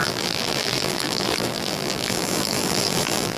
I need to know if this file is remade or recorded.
remade